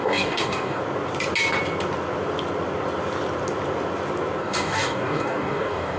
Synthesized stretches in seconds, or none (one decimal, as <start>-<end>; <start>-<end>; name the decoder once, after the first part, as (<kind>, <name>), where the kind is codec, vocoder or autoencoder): 0.0-0.8 (codec, DAC); 4.4-6.0